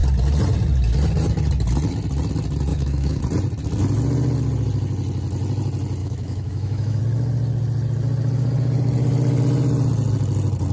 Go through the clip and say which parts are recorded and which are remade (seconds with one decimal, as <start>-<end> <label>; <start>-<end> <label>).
0.0-2.7 recorded; 2.7-3.2 remade; 3.2-6.0 recorded; 6.0-7.0 remade; 7.0-10.7 recorded